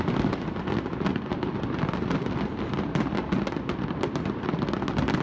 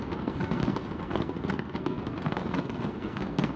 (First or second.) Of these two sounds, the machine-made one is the second